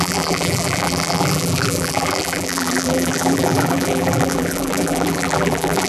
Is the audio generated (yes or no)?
yes